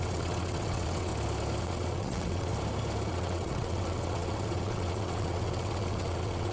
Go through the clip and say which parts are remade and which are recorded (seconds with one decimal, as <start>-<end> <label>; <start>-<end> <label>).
0.0-1.1 remade; 1.1-1.6 recorded; 1.6-2.5 remade; 2.5-3.1 recorded; 3.1-6.5 remade

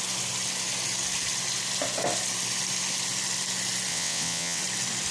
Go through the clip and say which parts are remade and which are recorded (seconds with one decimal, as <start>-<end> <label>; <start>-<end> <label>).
0.0-3.9 recorded; 3.9-4.6 remade; 4.6-5.1 recorded

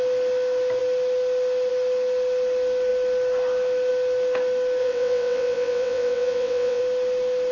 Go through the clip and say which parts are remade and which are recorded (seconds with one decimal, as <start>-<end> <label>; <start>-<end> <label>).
0.0-4.8 recorded; 4.8-6.8 remade; 6.8-7.5 recorded